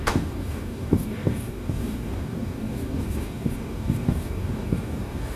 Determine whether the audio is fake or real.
fake